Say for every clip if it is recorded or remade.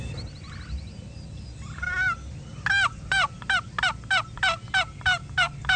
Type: recorded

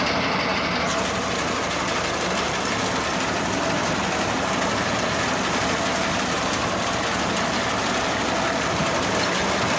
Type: remade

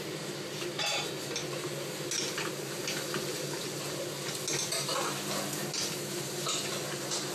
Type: recorded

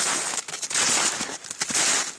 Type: recorded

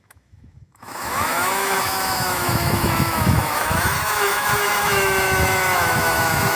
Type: remade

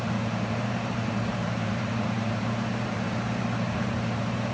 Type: remade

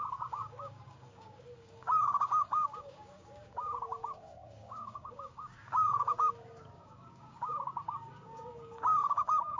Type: remade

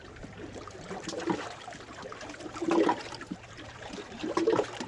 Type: remade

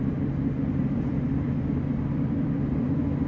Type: remade